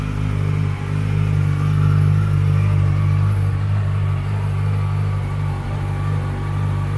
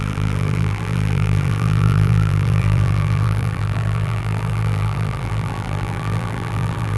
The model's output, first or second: second